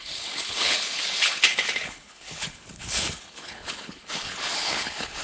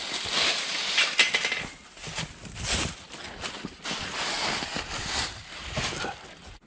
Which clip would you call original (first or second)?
second